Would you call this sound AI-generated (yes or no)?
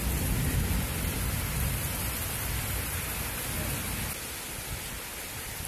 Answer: no